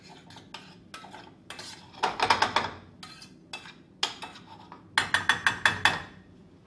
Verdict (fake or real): real